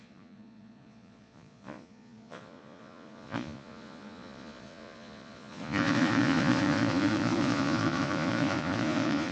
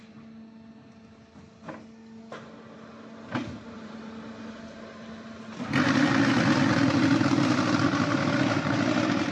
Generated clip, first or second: first